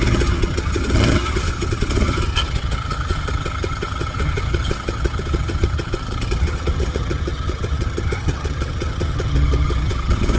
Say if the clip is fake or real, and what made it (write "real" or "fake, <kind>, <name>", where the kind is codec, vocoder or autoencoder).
fake, vocoder, HiFi-GAN